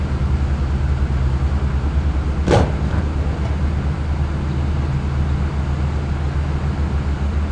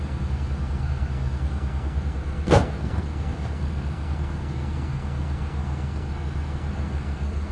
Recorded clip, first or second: first